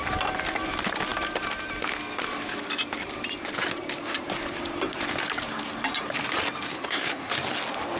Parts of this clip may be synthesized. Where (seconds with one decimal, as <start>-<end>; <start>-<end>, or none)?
6.7-7.3